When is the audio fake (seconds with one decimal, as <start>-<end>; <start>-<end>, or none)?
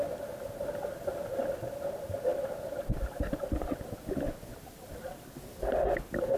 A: none